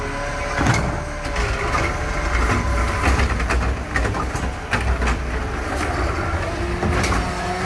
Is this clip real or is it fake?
real